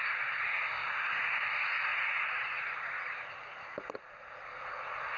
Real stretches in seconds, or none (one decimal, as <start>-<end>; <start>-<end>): 0.0-0.8; 1.5-5.2